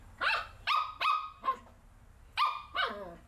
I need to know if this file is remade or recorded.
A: recorded